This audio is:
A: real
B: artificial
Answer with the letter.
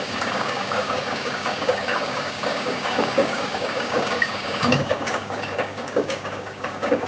B